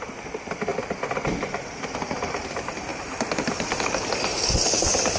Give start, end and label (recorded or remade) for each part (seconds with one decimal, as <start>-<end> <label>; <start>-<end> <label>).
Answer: 0.0-5.2 recorded